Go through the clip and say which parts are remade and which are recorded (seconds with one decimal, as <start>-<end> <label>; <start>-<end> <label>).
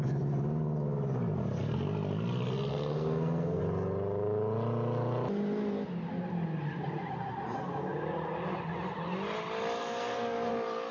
0.0-2.7 recorded; 2.7-3.6 remade; 3.6-9.8 recorded; 9.8-10.5 remade; 10.5-10.9 recorded